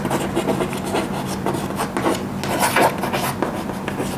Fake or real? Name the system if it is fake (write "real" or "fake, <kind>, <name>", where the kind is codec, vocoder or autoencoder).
real